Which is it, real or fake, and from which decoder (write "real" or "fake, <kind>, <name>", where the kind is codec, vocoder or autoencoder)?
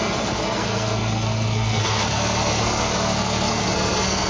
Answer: fake, codec, SNAC